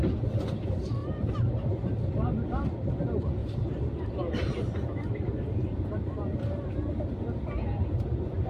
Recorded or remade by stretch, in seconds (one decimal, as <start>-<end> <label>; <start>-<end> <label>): 0.0-1.0 recorded; 1.0-1.5 remade; 1.5-3.4 recorded; 3.4-6.7 remade; 6.7-8.5 recorded